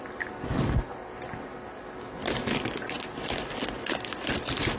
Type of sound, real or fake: real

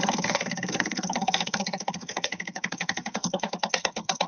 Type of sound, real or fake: fake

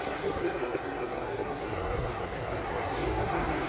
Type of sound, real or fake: fake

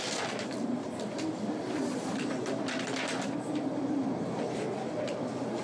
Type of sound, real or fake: real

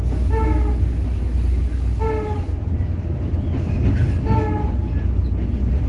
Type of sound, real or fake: real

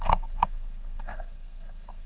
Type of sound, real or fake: fake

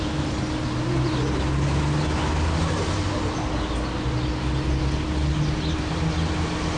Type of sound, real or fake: real